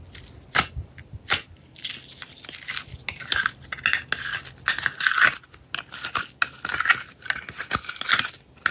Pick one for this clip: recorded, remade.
recorded